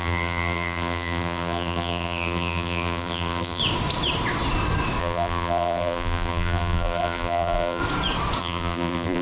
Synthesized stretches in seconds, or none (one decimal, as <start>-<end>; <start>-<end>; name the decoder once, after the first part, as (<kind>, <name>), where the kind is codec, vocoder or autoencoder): 0.0-3.6 (vocoder, BigVGAN v2); 5.0-7.8; 8.4-9.2